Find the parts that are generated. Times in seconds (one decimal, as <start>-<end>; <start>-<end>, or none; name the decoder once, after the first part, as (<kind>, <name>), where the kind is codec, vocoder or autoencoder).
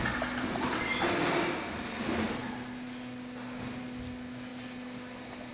none